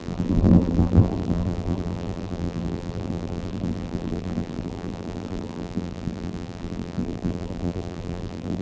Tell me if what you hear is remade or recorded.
remade